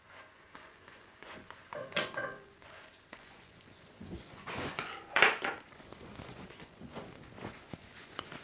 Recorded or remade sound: remade